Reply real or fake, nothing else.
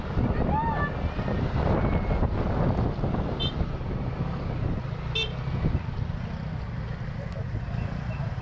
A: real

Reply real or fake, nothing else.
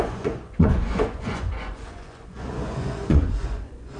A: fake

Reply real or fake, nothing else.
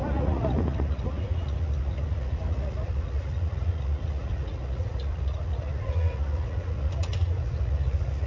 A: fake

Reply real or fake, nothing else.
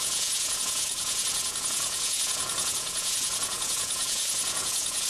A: fake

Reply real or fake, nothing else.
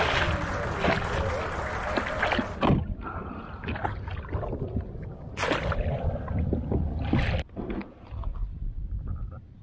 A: real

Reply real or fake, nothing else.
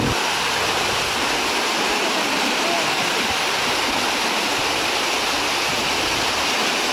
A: real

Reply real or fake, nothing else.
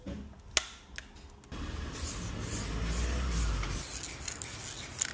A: real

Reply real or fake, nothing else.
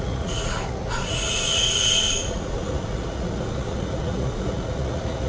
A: fake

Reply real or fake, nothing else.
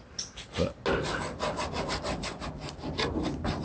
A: real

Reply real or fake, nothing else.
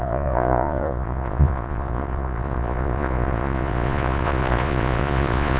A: fake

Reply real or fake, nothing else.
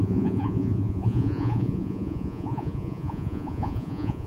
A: fake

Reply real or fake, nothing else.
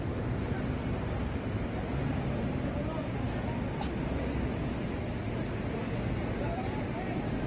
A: real